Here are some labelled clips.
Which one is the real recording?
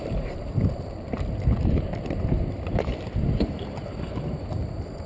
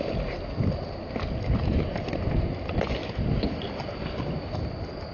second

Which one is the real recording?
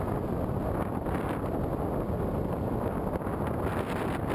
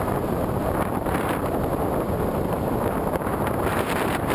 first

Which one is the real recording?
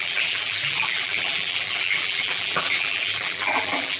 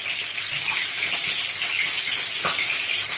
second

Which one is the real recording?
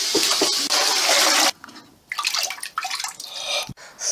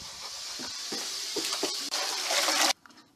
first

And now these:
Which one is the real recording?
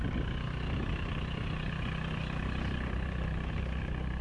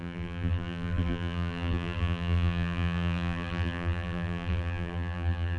first